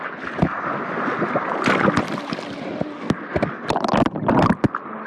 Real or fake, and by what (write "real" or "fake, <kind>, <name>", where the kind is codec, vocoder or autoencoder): real